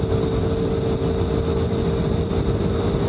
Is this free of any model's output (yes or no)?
yes